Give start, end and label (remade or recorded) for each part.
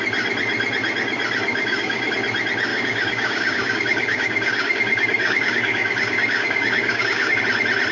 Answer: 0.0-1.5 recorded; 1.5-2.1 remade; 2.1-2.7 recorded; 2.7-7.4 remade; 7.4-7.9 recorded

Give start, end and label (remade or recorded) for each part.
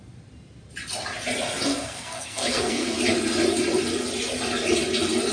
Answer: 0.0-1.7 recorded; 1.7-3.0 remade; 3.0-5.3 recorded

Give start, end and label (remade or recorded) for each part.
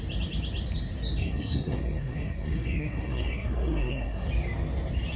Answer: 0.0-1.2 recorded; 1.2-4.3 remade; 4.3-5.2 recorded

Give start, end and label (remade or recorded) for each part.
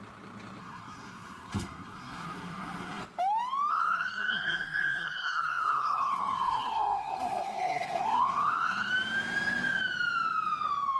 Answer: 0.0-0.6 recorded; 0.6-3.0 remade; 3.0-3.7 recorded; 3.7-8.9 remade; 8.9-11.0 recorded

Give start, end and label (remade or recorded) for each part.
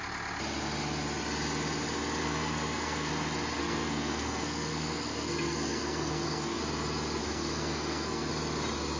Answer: 0.0-2.2 recorded; 2.2-3.1 remade; 3.1-3.6 recorded; 3.6-6.6 remade; 6.6-7.2 recorded; 7.2-8.3 remade; 8.3-9.0 recorded